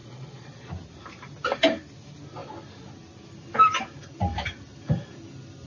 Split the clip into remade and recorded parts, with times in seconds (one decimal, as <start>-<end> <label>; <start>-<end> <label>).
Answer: 0.0-0.7 remade; 0.7-5.7 recorded